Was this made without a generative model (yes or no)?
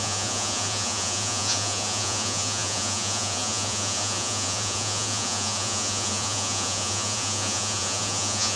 no